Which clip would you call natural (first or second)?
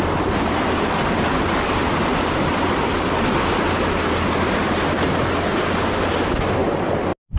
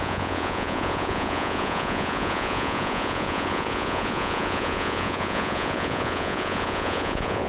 first